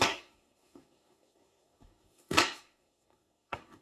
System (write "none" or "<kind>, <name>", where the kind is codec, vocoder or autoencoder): codec, SNAC